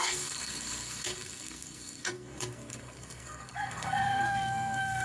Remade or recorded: remade